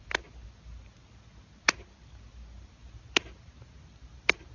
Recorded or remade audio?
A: recorded